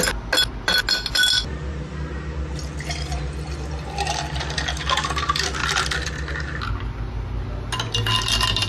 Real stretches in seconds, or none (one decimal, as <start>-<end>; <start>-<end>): 0.0-5.6; 6.3-8.7